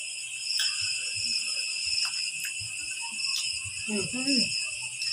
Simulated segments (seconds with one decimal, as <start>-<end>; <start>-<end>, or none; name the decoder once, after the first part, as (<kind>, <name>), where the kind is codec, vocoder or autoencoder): none